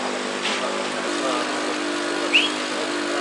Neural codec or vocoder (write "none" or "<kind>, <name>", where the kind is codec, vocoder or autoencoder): none